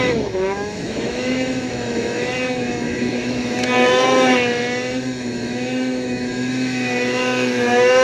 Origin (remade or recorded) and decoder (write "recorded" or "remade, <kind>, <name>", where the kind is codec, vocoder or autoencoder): remade, autoencoder, DAC-VAE